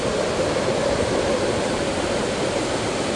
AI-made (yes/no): no